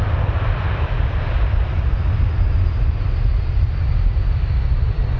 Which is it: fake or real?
real